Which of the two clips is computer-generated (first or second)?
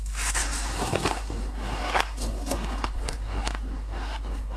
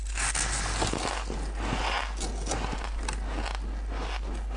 first